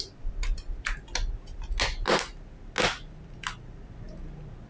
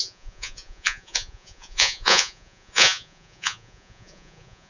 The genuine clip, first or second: first